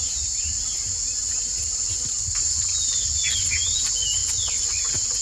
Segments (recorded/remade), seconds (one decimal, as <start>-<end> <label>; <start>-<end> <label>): 0.0-4.2 recorded; 4.2-4.8 remade; 4.8-5.2 recorded